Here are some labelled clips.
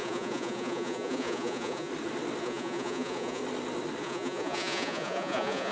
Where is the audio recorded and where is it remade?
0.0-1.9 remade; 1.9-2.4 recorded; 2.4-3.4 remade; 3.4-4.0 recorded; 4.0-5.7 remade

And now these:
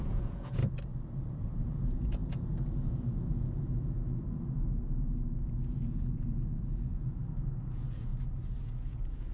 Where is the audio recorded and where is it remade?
0.0-0.6 remade; 0.6-1.4 recorded; 1.4-8.1 remade; 8.1-8.6 recorded; 8.6-9.3 remade